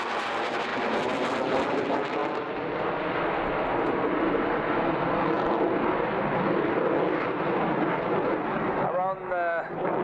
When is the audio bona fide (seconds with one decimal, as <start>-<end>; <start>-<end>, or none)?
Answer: 0.0-10.0